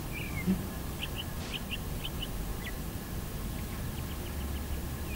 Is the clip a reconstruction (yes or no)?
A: no